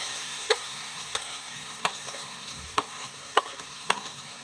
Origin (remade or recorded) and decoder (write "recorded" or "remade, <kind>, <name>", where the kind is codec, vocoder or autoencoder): remade, codec, SNAC